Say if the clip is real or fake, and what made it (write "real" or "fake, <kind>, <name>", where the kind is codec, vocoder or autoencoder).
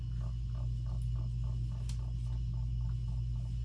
real